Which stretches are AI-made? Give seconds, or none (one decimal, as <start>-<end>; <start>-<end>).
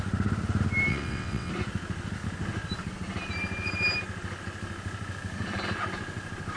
0.9-1.5